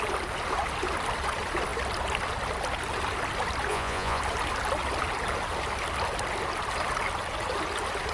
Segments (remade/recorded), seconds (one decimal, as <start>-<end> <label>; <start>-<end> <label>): 0.0-3.7 recorded; 3.7-4.2 remade; 4.2-8.1 recorded